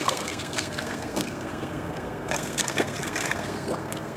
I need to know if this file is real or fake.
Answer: fake